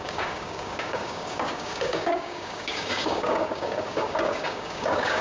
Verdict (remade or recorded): remade